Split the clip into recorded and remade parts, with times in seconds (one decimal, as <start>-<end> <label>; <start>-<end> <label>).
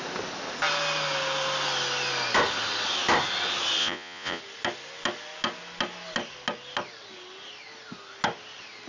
0.0-3.8 recorded; 3.8-4.4 remade; 4.4-8.9 recorded